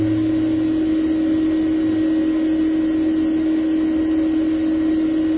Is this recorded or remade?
recorded